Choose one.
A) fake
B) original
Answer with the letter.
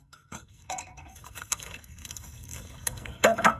A